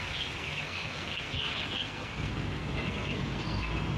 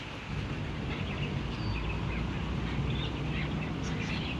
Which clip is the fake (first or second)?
first